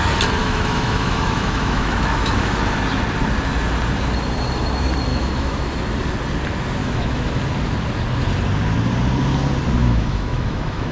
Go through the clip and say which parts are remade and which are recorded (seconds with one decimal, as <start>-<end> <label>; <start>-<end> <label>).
0.0-0.4 recorded; 0.4-2.6 remade; 2.6-5.1 recorded; 5.1-5.7 remade; 5.7-6.8 recorded; 6.8-7.4 remade; 7.4-9.8 recorded; 9.8-10.9 remade